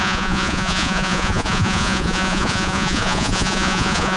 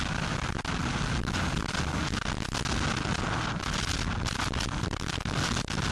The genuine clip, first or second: second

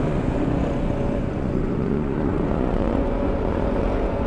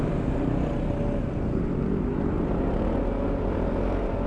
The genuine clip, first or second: second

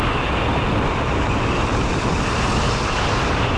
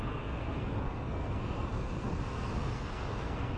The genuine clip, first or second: first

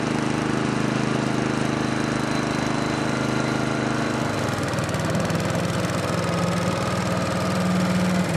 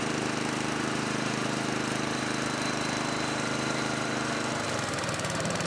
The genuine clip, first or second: first